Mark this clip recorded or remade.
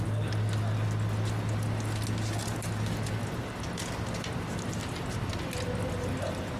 recorded